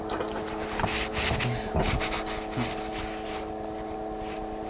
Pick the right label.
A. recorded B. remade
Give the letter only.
A